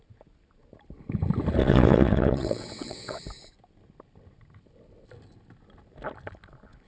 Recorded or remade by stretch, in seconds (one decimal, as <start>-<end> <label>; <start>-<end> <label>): 0.0-1.6 recorded; 1.6-3.2 remade; 3.2-6.9 recorded